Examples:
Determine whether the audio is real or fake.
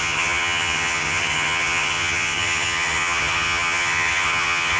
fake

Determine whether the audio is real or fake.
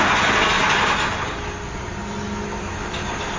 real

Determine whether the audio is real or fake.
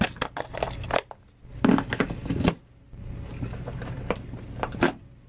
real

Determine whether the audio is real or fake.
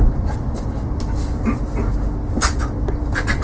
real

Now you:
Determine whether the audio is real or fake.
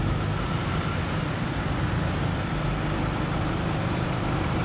real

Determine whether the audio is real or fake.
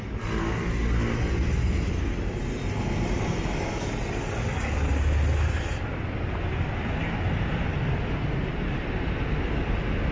real